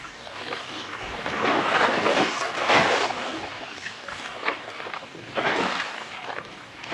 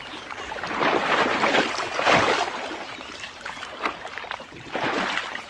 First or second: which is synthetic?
first